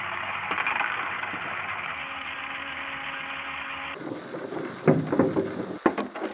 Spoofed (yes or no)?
no